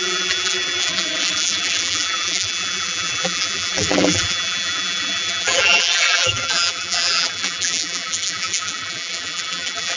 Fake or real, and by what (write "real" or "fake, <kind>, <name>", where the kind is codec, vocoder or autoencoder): fake, vocoder, BigVGAN v2